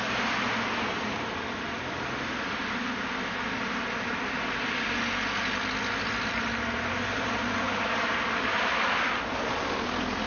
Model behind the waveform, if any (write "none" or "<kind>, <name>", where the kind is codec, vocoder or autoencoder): none